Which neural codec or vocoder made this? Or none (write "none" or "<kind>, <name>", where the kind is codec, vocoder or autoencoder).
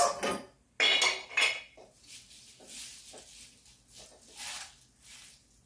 none